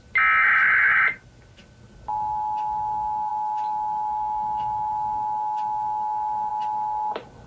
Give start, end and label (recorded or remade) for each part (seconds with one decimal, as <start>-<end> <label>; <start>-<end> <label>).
0.0-4.1 recorded; 4.1-4.9 remade; 4.9-7.5 recorded